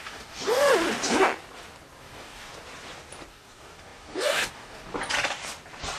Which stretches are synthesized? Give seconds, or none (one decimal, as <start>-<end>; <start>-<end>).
0.0-0.7; 2.0-2.5; 3.3-4.9